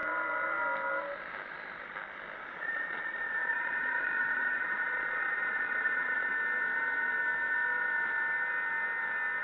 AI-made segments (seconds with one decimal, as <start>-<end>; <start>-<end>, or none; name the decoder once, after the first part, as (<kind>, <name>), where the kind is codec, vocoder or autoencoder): 2.4-6.3 (vocoder, Vocos)